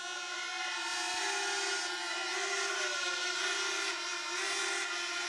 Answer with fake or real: real